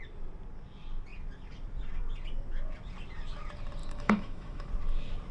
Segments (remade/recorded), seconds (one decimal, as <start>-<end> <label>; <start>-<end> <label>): 0.0-3.8 recorded; 3.8-4.7 remade; 4.7-5.3 recorded